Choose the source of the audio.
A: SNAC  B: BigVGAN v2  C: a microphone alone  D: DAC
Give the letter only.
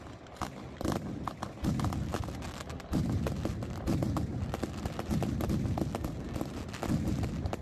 C